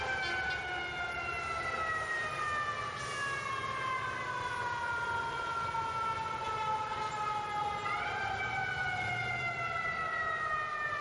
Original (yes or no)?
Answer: yes